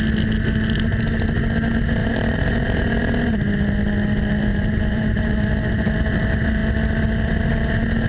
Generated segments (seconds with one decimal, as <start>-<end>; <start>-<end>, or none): 2.0-3.3; 4.5-5.7